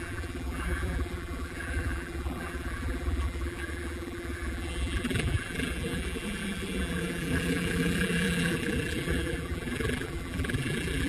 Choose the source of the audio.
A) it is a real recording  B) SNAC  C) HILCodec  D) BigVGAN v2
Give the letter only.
D